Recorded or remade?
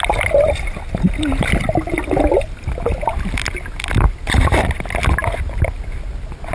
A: recorded